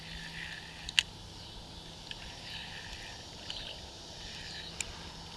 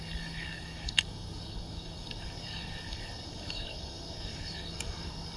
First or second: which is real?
first